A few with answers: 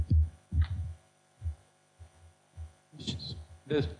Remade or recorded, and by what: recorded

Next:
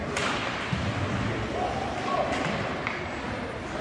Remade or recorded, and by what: recorded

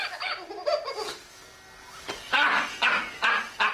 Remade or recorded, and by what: recorded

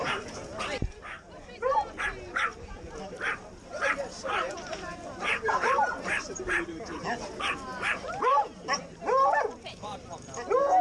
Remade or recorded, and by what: remade, vocoder, BigVGAN v2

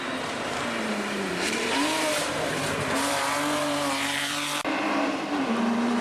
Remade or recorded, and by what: remade, vocoder, BigVGAN v2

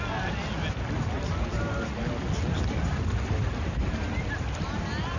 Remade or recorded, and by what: recorded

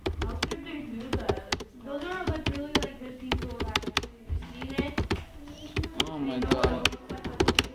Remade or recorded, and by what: recorded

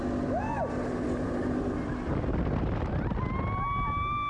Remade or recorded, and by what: recorded